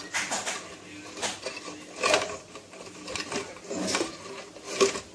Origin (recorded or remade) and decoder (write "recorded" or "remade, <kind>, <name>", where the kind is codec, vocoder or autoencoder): recorded